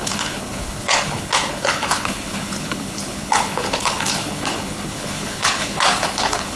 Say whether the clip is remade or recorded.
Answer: remade